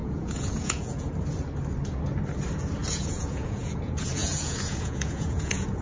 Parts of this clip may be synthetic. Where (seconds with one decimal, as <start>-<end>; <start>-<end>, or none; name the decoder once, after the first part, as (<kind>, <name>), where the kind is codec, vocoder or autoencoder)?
0.0-1.1 (vocoder, Vocos); 2.8-5.8